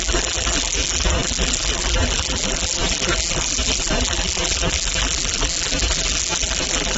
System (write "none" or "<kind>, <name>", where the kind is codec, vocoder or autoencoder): vocoder, BigVGAN v2